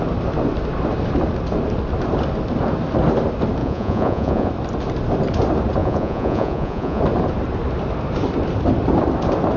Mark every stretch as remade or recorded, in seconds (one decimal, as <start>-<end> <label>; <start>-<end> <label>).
0.0-3.6 recorded; 3.6-4.5 remade; 4.5-5.8 recorded; 5.8-7.0 remade; 7.0-9.6 recorded